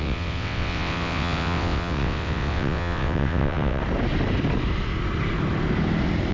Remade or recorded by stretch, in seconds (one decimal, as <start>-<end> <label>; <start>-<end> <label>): 0.0-3.8 remade; 3.8-6.3 recorded